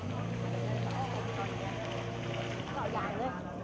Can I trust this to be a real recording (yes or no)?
yes